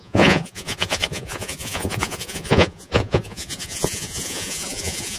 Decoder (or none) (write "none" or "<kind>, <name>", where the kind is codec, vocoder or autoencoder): vocoder, Vocos